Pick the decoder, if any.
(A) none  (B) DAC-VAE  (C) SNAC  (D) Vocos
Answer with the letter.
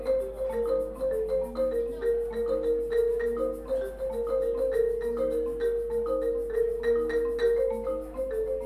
A